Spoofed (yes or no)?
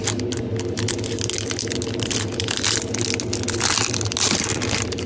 no